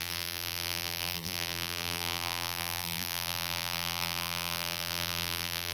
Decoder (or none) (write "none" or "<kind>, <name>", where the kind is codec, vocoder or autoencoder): vocoder, BigVGAN v2